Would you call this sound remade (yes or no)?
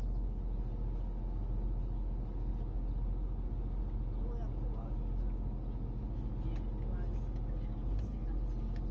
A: no